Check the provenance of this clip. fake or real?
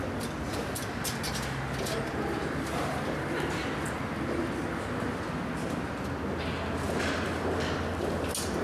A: real